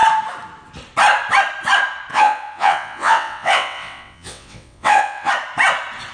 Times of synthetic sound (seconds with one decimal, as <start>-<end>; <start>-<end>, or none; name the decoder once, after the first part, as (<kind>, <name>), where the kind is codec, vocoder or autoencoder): 2.1-5.3 (vocoder, WaveNeXt)